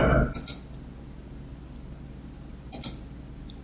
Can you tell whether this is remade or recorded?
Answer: recorded